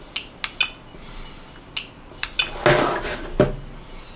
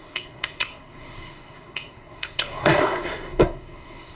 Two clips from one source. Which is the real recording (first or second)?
first